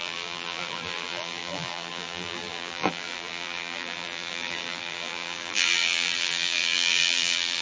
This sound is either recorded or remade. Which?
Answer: remade